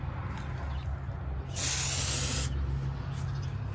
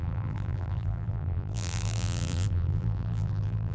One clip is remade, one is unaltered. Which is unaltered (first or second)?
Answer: first